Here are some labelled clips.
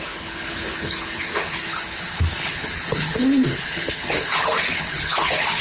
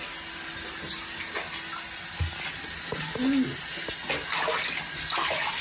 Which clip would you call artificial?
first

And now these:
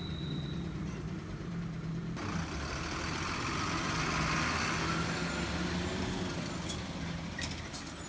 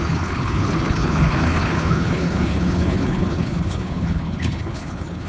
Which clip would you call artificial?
second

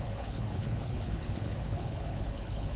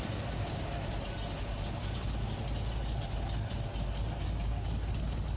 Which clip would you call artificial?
first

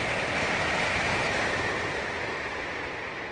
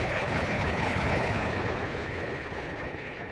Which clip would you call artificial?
second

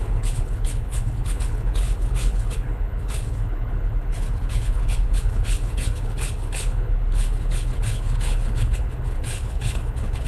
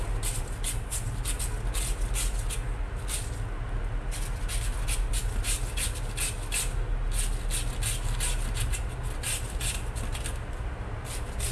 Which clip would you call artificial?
first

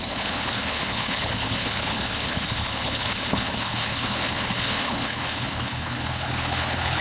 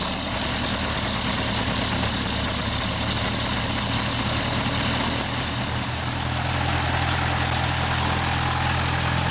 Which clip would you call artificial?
first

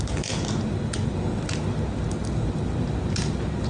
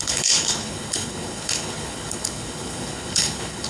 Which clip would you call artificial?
second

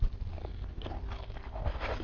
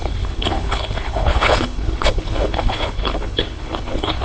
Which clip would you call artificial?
second